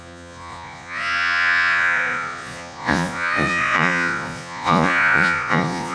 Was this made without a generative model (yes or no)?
no